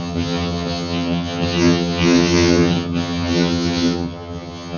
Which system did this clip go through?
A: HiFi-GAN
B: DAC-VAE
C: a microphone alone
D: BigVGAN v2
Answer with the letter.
A